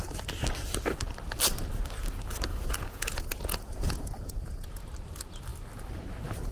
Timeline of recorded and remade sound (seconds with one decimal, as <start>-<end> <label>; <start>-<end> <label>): 0.0-2.5 recorded; 2.5-4.9 remade; 4.9-6.5 recorded